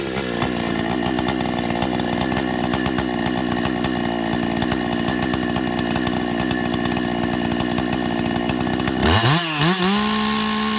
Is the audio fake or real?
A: real